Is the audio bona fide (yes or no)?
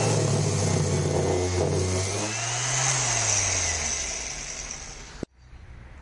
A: yes